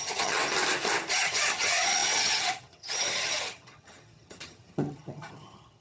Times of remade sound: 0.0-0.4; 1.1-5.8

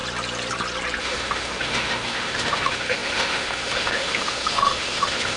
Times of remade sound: 1.0-5.4

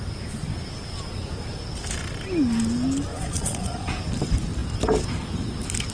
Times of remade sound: 3.1-3.9

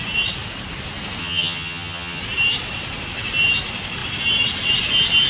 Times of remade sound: 1.2-2.2

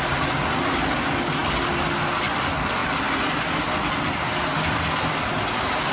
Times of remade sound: none

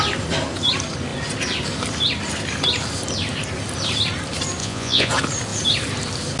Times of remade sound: 4.6-5.1